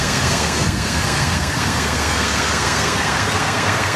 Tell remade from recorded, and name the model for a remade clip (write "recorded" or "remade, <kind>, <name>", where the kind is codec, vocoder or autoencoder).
remade, codec, SNAC